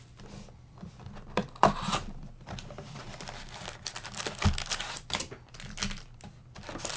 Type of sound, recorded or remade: recorded